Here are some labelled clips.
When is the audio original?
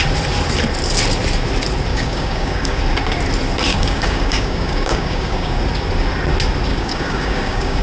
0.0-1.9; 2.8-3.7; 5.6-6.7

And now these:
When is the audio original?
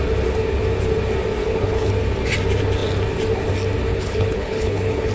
0.0-1.4; 1.9-3.9